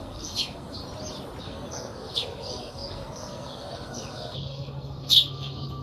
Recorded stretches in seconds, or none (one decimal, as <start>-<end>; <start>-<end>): 0.8-1.4